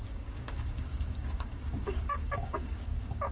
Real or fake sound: fake